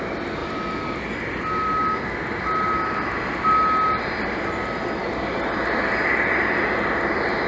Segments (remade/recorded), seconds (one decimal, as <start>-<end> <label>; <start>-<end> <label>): 0.0-7.5 recorded